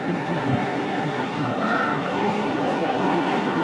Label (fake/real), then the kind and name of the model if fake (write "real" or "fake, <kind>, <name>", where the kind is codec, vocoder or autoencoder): fake, codec, SNAC